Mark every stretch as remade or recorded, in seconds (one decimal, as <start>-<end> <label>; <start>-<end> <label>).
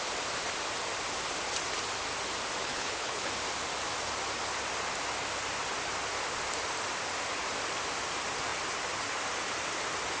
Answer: 0.0-2.6 recorded; 2.6-3.3 remade; 3.3-10.2 recorded